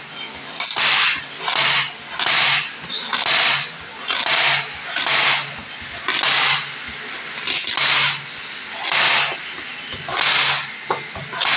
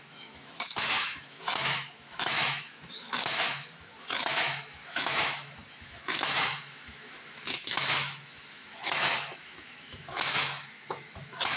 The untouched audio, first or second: first